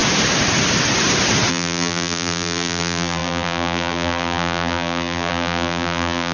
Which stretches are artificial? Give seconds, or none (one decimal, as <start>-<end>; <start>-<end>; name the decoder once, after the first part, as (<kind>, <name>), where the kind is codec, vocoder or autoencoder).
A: 1.5-6.3 (vocoder, BigVGAN v2)

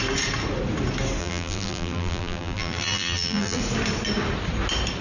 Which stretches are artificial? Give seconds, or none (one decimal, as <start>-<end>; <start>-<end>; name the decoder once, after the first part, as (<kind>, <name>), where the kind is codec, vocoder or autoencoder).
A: 1.2-3.6 (vocoder, BigVGAN v2)

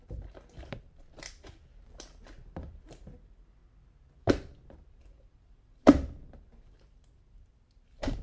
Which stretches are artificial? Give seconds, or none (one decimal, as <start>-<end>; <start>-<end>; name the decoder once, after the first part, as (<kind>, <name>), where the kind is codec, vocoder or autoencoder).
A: 0.0-3.6 (vocoder, BigVGAN v2); 4.7-8.2

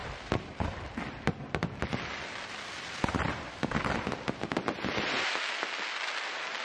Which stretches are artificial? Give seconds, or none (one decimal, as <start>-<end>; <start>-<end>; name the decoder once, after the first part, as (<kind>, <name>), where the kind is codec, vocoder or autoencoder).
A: 0.0-4.0 (vocoder, BigVGAN v2)